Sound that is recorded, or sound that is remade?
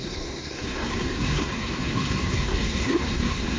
remade